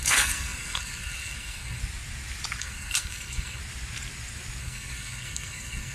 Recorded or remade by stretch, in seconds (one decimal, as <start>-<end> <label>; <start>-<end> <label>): 0.0-1.8 remade; 1.8-2.6 recorded; 2.6-3.6 remade; 3.6-4.6 recorded; 4.6-5.9 remade